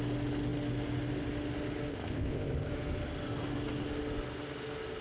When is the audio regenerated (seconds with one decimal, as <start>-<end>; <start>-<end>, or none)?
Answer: 1.9-2.7